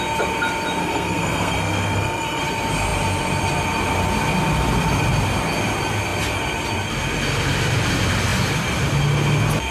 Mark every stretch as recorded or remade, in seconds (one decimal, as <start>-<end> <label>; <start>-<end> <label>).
0.0-0.8 recorded; 0.8-2.4 remade; 2.4-9.7 recorded